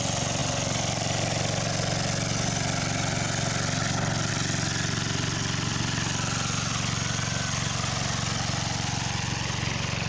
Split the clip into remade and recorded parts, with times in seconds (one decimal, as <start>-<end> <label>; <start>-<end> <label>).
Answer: 0.0-10.1 recorded